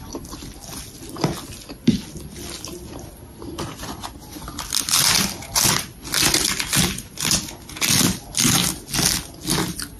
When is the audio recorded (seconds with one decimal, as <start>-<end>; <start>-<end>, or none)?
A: 0.0-10.0